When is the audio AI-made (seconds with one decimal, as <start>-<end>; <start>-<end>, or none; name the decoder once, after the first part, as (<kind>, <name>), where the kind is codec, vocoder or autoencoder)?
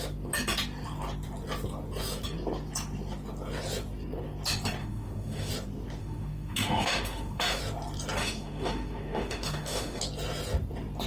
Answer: 4.8-5.5 (autoencoder, DAC-VAE); 6.0-7.6; 8.2-10.0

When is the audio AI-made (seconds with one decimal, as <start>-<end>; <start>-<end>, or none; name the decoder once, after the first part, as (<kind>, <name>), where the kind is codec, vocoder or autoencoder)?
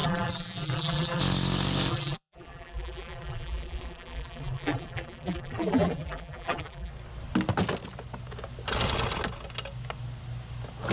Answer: 0.0-1.2 (vocoder, BigVGAN v2); 1.9-6.9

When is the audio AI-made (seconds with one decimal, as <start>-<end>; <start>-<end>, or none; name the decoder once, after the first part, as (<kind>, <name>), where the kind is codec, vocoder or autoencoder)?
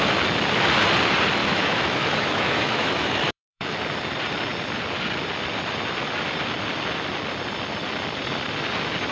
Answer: 1.4-3.8 (autoencoder, DAC-VAE)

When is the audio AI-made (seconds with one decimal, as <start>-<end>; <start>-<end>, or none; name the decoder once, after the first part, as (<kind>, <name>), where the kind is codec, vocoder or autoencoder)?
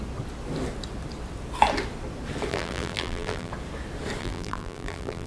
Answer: 2.5-3.5 (vocoder, BigVGAN v2); 4.2-5.3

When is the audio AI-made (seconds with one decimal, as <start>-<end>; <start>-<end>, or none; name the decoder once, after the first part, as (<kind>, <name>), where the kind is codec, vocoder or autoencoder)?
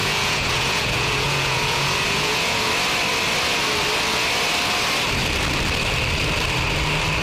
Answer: 0.0-2.7 (vocoder, Vocos)